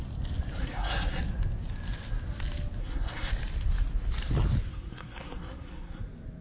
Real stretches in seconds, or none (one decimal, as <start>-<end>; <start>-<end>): 0.0-0.6; 1.2-2.8; 3.3-4.7; 6.0-6.4

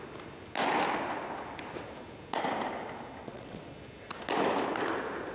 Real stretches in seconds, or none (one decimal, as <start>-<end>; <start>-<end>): 0.0-3.2; 3.7-5.3